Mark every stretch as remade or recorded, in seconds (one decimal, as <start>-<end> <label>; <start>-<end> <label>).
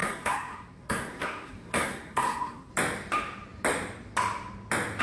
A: 0.0-2.7 remade; 2.7-5.0 recorded